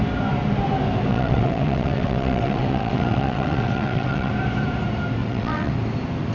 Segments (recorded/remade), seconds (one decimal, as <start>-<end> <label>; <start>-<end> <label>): 0.0-1.1 recorded; 1.1-4.3 remade; 4.3-5.2 recorded; 5.2-5.7 remade; 5.7-6.3 recorded